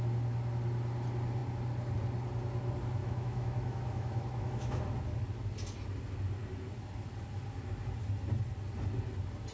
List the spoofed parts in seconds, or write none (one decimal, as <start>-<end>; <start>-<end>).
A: 3.0-4.8